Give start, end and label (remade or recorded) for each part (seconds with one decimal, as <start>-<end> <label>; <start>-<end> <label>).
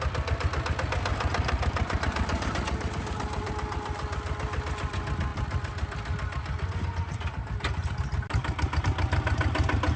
0.0-1.1 recorded; 1.1-3.5 remade; 3.5-10.0 recorded